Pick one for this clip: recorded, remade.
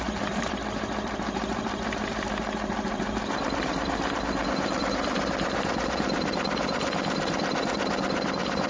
remade